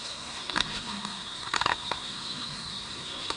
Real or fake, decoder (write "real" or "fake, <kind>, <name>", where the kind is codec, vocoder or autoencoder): fake, codec, SNAC